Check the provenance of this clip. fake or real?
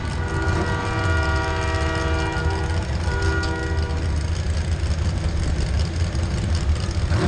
real